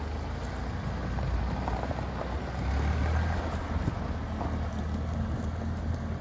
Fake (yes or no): no